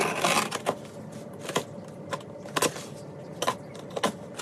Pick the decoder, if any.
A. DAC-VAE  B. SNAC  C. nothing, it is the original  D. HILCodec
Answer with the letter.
C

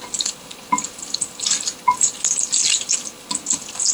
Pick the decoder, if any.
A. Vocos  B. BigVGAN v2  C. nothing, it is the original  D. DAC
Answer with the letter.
C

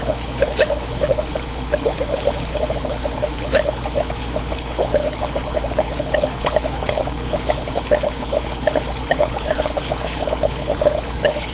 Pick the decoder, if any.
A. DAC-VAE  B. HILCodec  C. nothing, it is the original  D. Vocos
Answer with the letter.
B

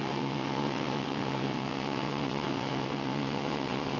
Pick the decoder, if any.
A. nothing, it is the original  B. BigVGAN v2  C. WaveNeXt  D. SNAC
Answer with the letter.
C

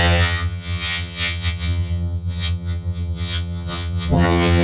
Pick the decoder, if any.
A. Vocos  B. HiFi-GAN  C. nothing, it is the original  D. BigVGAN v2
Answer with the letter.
B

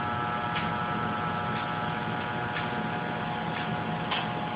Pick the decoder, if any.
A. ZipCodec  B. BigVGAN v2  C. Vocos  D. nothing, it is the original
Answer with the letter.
D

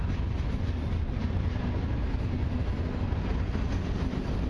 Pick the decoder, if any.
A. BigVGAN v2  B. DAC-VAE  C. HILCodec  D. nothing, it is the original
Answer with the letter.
D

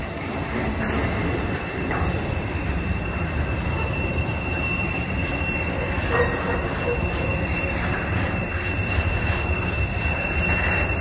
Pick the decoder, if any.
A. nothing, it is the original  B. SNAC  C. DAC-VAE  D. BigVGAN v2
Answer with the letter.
D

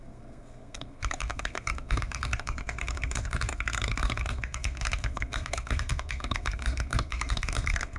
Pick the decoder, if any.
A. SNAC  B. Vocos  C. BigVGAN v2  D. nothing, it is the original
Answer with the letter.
A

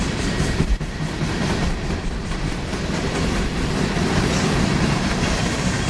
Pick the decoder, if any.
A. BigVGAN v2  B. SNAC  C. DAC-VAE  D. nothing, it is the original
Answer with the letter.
A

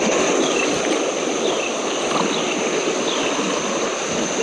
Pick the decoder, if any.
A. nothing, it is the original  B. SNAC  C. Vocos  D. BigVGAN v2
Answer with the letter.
A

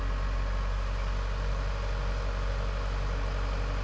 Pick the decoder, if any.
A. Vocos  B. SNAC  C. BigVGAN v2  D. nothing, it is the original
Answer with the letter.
D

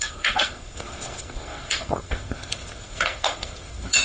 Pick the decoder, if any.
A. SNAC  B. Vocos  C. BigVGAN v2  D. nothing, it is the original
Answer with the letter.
A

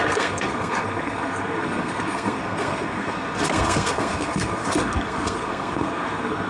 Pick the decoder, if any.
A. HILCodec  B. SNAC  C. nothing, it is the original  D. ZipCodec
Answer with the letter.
B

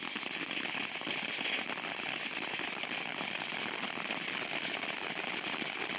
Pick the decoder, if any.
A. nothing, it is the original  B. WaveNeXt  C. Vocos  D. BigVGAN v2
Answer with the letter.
A